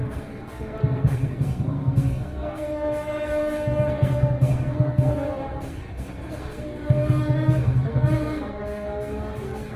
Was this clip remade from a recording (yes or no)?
yes